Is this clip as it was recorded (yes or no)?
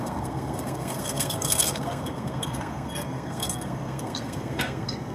no